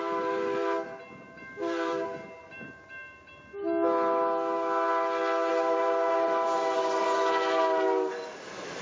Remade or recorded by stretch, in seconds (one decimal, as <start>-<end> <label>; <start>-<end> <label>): 0.0-3.5 remade; 3.5-5.5 recorded; 5.5-8.8 remade